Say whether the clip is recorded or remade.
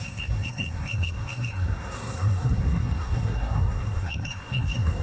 remade